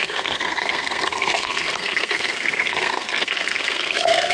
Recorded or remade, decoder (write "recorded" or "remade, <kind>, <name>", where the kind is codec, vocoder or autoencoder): remade, codec, SNAC